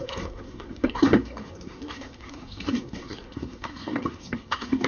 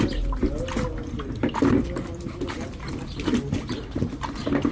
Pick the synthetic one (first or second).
first